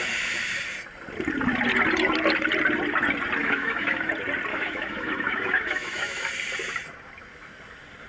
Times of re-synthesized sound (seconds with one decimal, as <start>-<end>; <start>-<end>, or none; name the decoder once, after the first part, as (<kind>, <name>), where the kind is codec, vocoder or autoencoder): 3.4-4.1 (autoencoder, DAC-VAE); 4.5-6.3